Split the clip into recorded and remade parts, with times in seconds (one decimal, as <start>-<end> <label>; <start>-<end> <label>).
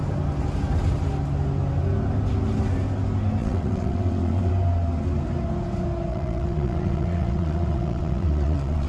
0.0-3.4 recorded; 3.4-4.5 remade; 4.5-6.1 recorded; 6.1-8.9 remade